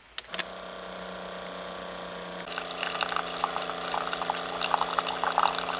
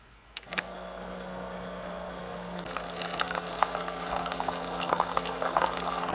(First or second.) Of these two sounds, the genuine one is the first